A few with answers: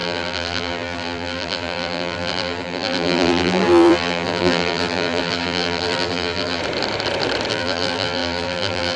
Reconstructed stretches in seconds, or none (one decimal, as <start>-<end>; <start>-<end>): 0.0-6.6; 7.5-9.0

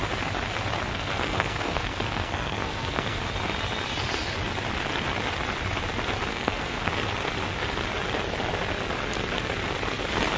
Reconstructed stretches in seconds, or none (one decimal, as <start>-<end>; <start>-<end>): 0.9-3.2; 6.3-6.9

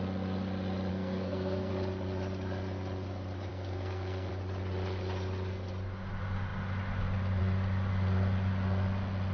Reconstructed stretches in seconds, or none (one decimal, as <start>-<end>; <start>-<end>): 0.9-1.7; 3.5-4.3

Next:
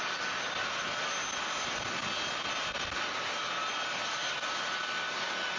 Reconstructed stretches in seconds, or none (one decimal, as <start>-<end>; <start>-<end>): none

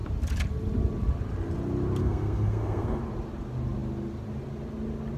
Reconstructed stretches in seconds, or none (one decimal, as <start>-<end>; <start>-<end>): 2.0-3.0

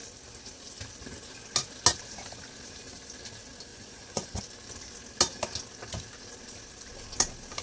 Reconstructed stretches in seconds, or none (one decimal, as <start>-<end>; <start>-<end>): 3.7-4.4